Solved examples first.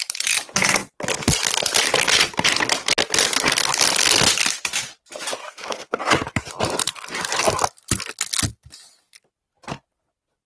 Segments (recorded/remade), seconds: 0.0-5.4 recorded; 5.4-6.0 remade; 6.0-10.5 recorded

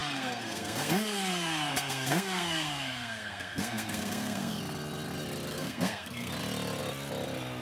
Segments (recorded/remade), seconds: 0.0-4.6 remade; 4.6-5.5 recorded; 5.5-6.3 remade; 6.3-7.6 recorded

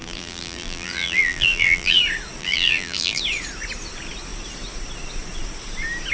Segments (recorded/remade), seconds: 0.0-2.0 remade; 2.0-2.4 recorded; 2.4-3.2 remade; 3.2-6.1 recorded

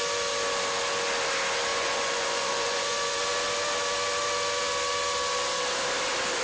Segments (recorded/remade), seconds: 0.0-1.7 recorded; 1.7-3.2 remade; 3.2-6.4 recorded